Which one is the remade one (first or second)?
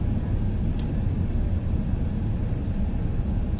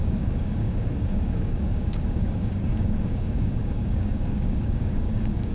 second